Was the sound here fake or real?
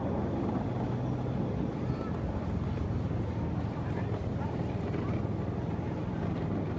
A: real